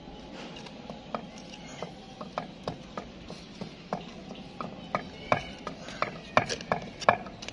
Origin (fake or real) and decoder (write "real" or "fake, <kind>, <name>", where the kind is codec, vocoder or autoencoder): real